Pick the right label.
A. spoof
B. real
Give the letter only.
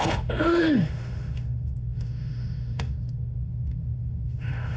A